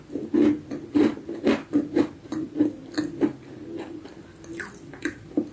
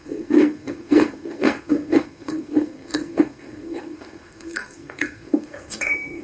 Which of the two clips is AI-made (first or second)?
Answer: second